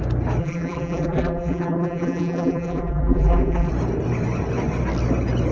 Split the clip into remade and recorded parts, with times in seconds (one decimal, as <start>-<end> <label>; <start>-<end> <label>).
0.0-0.4 recorded; 0.4-3.7 remade; 3.7-5.5 recorded